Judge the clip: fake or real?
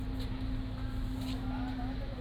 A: real